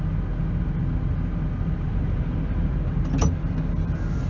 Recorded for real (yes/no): yes